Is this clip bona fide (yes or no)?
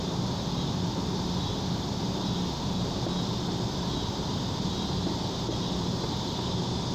yes